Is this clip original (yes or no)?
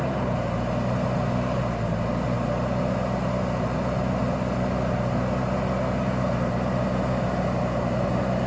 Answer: yes